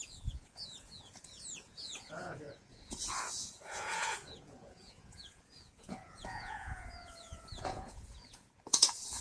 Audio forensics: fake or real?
fake